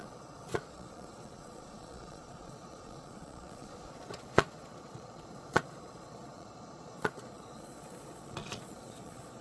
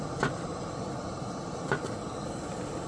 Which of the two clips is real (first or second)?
second